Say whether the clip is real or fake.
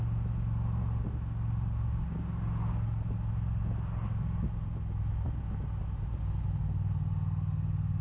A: real